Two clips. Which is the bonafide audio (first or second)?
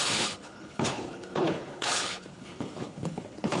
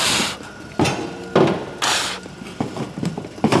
second